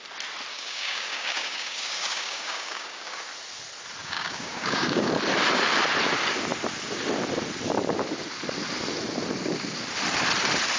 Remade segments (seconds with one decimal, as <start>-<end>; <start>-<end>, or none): 0.5-3.2; 4.0-5.1